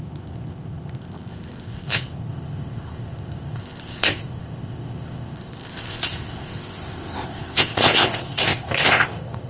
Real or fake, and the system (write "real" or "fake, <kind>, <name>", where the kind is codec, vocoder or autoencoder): fake, codec, ZipCodec